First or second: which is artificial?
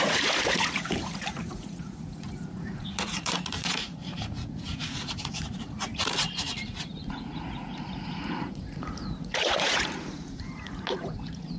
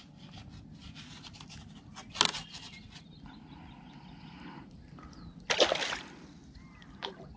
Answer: first